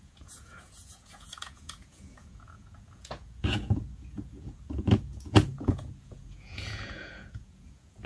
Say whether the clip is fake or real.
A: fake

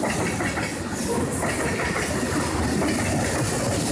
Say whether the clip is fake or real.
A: real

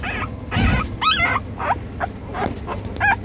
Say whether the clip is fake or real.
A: real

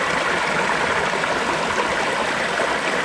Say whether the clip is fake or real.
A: real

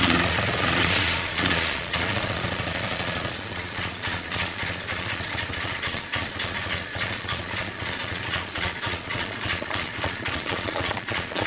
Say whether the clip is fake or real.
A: fake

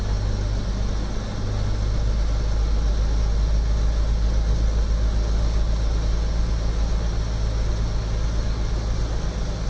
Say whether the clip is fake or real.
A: real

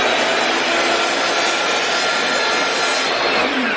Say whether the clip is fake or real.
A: real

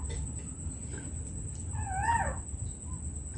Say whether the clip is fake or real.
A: real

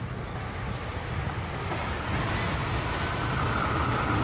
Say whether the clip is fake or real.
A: real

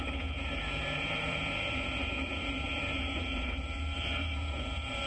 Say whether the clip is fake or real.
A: fake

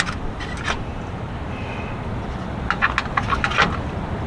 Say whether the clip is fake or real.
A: real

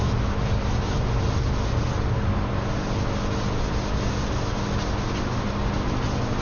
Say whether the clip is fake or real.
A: real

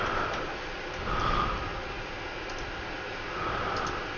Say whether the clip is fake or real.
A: real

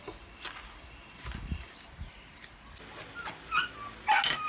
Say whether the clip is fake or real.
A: real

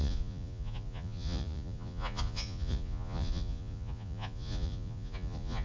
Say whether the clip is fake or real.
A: fake